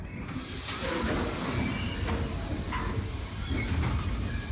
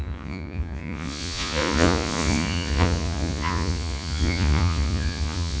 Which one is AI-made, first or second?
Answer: second